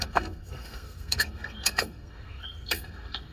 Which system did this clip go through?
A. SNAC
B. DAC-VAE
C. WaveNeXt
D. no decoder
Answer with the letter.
A